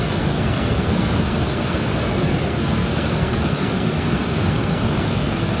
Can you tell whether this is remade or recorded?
remade